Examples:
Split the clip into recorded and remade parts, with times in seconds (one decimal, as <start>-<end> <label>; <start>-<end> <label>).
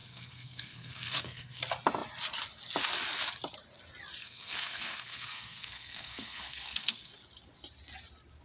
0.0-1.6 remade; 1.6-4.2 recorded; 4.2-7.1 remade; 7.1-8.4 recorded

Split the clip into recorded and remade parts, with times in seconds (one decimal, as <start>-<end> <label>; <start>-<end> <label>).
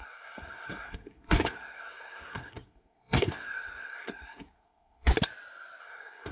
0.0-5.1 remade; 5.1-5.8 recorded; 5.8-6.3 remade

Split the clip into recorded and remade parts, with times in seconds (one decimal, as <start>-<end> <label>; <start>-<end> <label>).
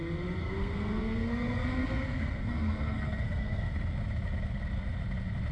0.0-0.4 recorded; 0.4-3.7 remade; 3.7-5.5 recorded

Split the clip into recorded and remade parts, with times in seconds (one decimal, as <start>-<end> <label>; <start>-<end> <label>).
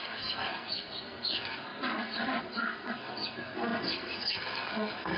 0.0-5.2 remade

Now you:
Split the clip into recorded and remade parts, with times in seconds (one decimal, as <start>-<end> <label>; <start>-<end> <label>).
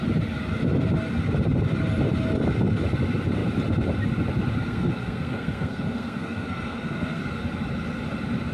0.0-4.6 recorded; 4.6-7.2 remade; 7.2-8.5 recorded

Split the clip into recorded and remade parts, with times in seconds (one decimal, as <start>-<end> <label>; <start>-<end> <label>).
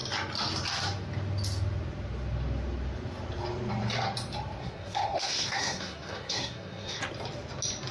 0.0-4.6 recorded; 4.6-7.0 remade; 7.0-7.9 recorded